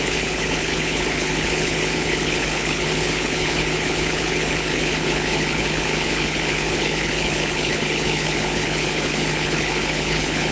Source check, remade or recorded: remade